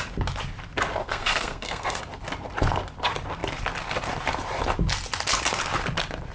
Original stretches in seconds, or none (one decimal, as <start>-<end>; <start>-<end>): 0.0-1.0; 2.0-6.3